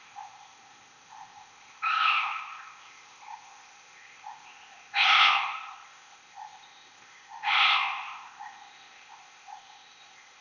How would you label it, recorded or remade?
remade